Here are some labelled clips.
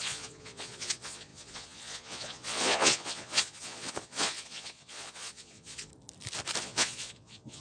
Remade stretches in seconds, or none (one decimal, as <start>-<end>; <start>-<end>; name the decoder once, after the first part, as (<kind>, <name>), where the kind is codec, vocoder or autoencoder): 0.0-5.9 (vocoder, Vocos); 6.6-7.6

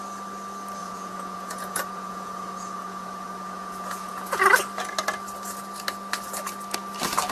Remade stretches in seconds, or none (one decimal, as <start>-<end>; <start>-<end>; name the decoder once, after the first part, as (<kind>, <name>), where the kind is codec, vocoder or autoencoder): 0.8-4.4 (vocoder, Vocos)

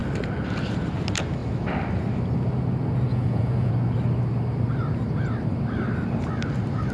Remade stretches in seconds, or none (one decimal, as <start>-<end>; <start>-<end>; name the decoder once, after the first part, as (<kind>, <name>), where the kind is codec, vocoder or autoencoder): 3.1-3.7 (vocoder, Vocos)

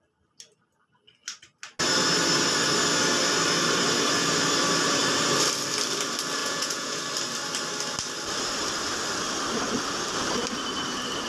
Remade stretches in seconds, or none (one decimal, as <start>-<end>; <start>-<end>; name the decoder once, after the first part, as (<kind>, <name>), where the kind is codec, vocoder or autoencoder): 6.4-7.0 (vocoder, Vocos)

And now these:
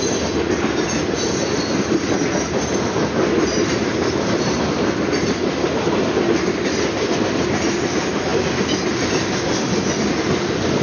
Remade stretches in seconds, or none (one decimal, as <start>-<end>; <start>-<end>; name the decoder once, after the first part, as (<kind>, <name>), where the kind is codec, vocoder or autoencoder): none

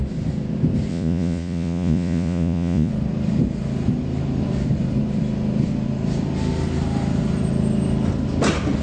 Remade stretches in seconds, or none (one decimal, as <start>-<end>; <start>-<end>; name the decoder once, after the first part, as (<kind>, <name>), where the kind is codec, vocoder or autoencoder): 0.9-2.9 (vocoder, Vocos)

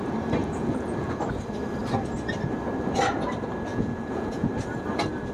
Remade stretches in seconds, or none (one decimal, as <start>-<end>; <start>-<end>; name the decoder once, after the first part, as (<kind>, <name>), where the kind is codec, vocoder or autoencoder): 0.4-1.2 (vocoder, Vocos); 3.7-4.5